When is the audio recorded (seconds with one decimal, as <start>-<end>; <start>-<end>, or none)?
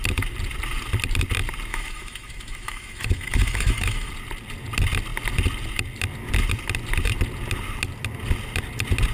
0.0-1.7; 4.1-9.1